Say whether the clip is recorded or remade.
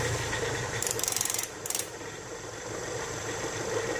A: remade